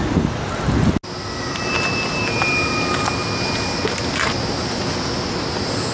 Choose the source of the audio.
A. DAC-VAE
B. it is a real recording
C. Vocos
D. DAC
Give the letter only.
B